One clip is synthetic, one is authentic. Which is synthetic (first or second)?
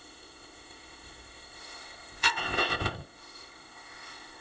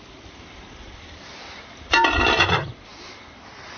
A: first